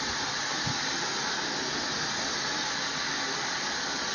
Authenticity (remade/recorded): recorded